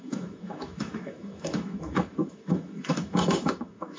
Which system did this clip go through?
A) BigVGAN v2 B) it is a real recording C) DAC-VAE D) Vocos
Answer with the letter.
C